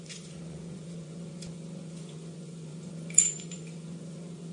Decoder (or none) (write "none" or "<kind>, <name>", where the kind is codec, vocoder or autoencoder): vocoder, Vocos